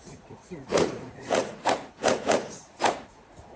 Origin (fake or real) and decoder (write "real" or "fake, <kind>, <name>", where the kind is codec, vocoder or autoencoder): fake, vocoder, Vocos